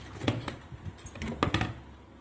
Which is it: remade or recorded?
recorded